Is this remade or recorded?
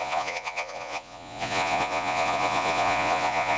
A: remade